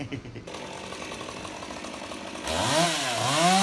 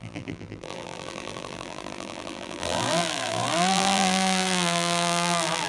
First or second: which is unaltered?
first